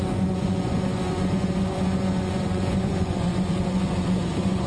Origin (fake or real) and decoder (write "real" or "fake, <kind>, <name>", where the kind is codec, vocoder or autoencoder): fake, vocoder, Vocos